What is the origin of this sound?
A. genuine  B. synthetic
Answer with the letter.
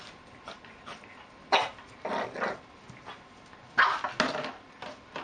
A